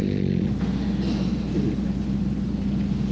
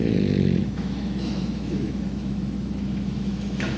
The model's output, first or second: second